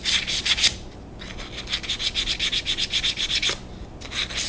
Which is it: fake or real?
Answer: fake